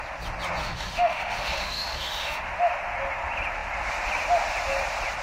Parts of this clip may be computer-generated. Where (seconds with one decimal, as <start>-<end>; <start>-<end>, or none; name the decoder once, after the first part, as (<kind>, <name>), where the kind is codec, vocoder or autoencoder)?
0.6-2.4 (autoencoder, DAC-VAE)